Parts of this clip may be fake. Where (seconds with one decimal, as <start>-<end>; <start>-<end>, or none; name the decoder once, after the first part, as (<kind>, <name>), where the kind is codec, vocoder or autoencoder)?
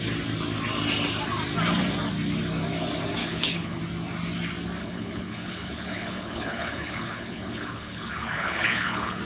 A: 3.2-3.8 (codec, HILCodec); 4.8-9.2